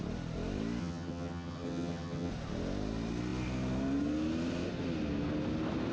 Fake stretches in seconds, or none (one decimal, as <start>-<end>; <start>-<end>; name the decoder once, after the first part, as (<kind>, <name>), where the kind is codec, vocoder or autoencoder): 0.8-2.3 (vocoder, HiFi-GAN)